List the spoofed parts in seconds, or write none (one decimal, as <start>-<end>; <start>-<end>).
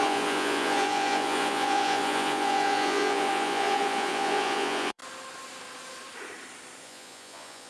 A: 0.0-5.0; 6.8-7.7